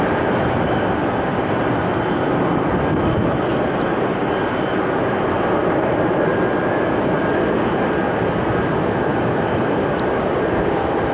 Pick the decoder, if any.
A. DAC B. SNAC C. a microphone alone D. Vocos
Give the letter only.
C